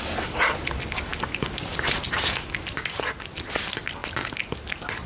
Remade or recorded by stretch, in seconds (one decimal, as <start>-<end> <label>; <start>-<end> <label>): 0.0-5.1 recorded